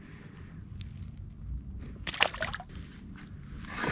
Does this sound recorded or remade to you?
recorded